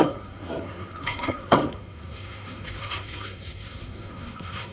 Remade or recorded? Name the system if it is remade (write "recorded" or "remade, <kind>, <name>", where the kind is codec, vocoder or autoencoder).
remade, codec, SNAC